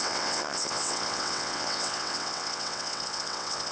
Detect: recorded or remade remade